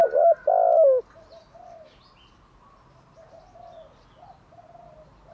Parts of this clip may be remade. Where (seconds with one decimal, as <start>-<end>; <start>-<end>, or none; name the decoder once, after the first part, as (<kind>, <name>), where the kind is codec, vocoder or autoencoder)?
none